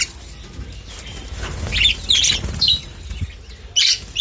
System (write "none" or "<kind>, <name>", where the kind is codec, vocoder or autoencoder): none